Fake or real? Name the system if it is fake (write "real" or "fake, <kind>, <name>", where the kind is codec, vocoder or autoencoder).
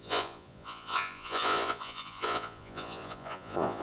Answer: fake, vocoder, Vocos